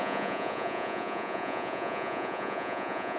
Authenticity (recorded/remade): remade